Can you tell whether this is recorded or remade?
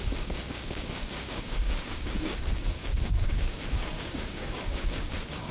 remade